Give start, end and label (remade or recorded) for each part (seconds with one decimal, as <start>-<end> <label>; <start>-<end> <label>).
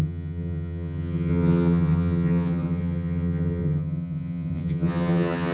0.0-5.5 remade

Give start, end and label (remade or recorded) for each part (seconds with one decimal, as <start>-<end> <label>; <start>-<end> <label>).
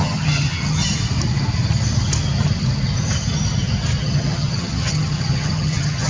0.0-0.8 remade; 0.8-4.0 recorded; 4.0-6.1 remade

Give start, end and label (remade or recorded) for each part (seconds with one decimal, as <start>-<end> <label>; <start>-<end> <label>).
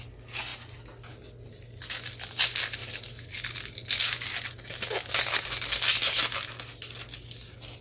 0.0-7.8 recorded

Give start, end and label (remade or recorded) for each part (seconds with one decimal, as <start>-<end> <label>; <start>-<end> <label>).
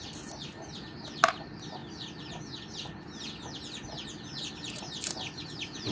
0.0-5.9 recorded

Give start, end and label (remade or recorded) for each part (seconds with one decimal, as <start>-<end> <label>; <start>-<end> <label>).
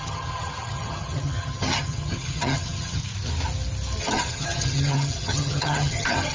0.0-3.0 remade; 3.0-4.0 recorded; 4.0-6.3 remade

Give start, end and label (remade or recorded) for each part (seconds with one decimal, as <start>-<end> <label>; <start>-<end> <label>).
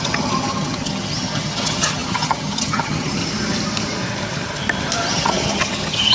0.0-3.2 remade; 3.2-5.1 recorded; 5.1-6.1 remade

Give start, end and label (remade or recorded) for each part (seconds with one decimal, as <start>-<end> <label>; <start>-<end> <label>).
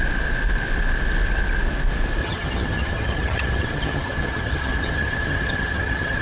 0.0-2.2 recorded; 2.2-6.2 remade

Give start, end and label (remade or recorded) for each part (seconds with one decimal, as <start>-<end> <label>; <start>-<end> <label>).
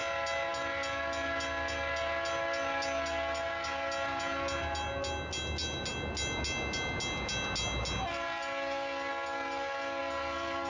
0.0-10.7 recorded